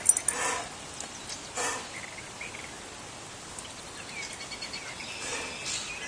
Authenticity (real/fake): real